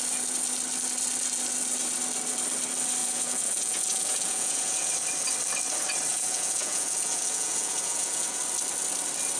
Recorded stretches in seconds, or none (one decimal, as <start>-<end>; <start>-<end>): 0.0-3.0; 4.9-6.1; 8.4-9.4